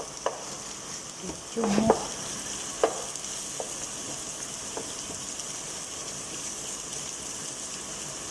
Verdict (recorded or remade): recorded